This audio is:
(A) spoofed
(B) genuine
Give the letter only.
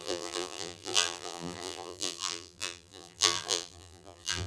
A